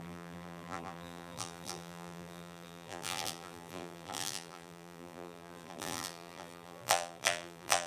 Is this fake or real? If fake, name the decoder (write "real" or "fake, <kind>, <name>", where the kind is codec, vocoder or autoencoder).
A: fake, vocoder, BigVGAN v2